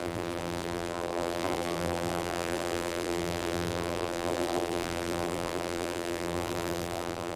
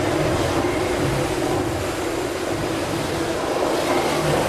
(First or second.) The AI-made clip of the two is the first